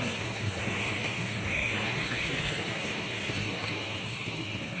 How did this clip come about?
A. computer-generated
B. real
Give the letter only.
A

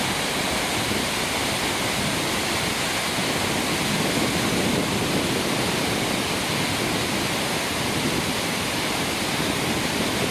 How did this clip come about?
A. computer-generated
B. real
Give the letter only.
B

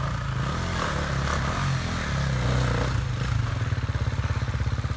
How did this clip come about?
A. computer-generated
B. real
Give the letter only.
B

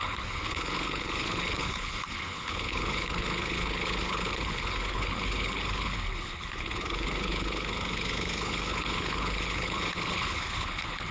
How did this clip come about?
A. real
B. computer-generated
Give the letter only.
B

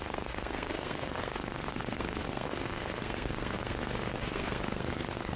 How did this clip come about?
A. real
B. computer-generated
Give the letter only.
B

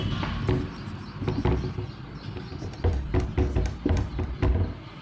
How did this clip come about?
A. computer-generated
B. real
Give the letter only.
B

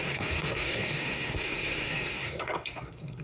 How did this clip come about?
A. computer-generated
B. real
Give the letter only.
A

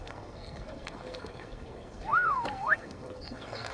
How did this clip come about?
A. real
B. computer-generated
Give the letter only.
B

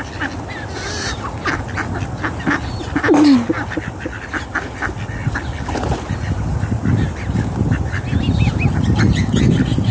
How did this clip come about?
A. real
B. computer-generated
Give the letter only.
A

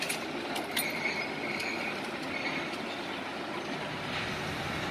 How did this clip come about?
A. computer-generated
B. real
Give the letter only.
B